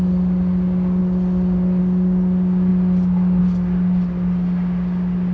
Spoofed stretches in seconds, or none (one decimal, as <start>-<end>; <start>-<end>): none